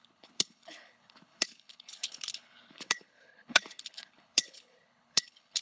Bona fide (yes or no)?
no